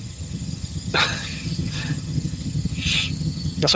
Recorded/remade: remade